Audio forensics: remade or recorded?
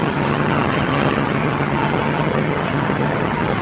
remade